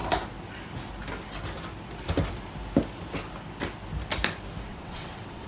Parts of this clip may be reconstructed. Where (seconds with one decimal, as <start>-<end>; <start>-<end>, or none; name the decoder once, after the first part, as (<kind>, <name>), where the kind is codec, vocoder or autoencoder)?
4.7-5.5 (vocoder, WaveNeXt)